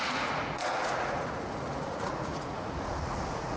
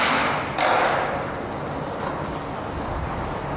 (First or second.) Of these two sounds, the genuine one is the second